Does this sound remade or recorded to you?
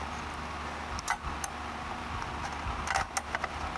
recorded